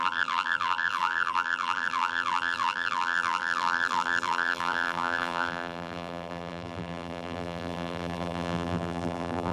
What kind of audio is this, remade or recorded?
remade